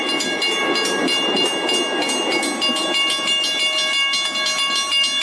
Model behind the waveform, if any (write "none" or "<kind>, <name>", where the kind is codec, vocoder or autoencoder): none